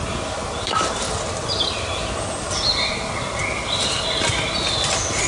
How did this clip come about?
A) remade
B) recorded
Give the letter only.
B